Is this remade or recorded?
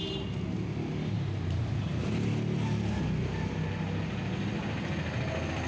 recorded